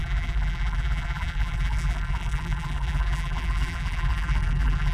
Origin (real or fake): fake